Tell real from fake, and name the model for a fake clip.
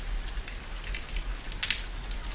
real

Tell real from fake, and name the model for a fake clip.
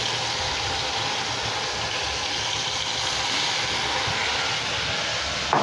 real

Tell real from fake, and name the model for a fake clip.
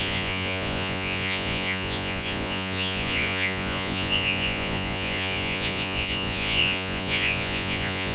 fake, vocoder, Vocos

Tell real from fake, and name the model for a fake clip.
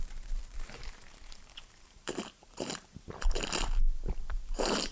fake, vocoder, BigVGAN v2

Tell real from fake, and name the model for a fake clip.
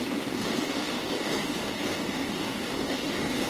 fake, codec, DAC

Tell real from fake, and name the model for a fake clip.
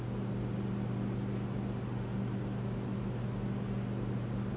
real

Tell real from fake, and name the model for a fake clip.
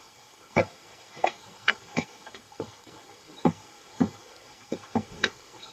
fake, codec, SNAC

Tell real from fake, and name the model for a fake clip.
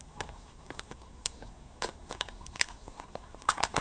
fake, codec, SNAC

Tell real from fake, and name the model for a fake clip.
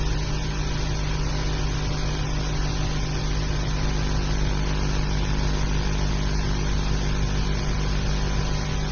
real